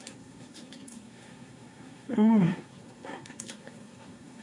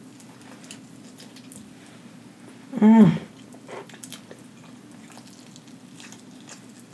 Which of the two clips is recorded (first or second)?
second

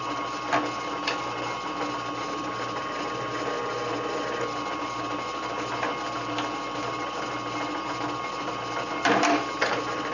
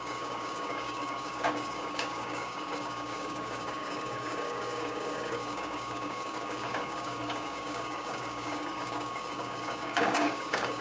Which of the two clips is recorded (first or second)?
first